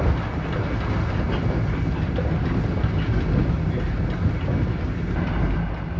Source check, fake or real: real